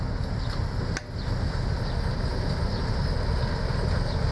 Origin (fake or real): real